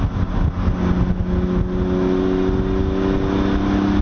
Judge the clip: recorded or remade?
recorded